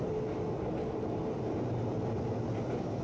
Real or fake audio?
real